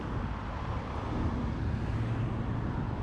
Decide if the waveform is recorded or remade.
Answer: recorded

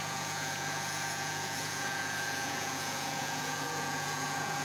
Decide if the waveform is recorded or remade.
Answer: remade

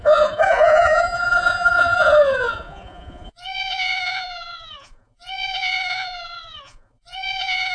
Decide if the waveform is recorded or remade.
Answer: remade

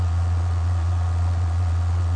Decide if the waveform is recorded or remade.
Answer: remade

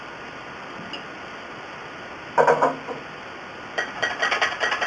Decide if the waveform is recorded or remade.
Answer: recorded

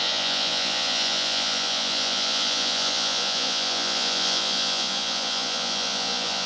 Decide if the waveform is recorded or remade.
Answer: remade